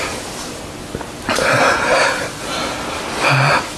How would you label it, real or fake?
real